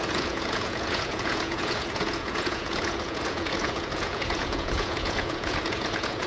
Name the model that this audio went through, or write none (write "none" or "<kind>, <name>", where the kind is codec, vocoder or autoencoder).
vocoder, Vocos